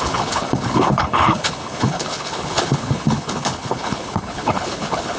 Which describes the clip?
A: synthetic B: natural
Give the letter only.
A